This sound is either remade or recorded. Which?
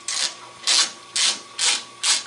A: recorded